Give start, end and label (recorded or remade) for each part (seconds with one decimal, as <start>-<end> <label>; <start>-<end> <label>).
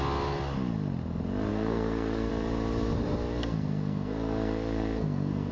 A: 0.0-1.5 recorded; 1.5-2.3 remade; 2.3-3.4 recorded; 3.4-5.5 remade